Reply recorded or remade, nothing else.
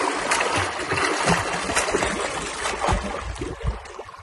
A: recorded